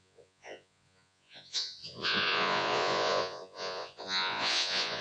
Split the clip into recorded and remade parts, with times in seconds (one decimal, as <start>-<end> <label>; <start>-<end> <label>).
0.0-5.0 remade